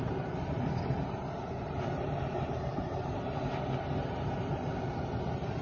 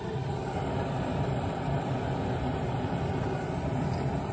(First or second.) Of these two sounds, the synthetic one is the first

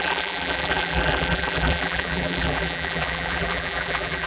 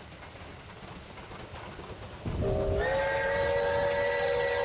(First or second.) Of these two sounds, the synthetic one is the first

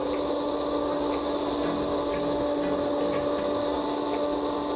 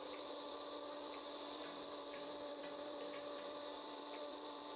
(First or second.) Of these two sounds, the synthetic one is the second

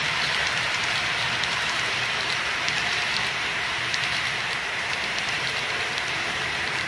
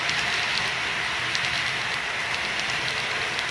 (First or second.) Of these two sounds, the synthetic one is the first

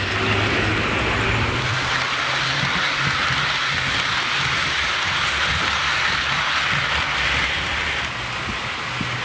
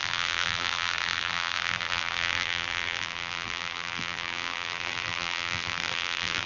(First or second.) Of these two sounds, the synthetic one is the second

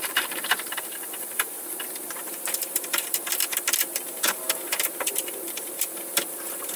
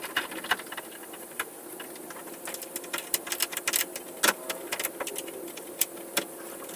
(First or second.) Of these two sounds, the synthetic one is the first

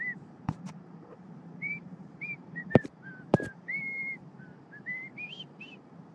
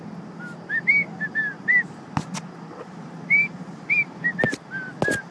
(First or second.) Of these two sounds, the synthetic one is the first